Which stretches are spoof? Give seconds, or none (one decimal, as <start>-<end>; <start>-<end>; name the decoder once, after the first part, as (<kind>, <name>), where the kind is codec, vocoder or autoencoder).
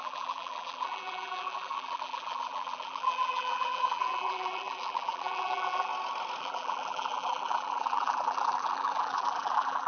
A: 0.0-5.9 (vocoder, BigVGAN v2); 6.4-9.9